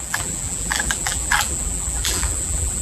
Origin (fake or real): fake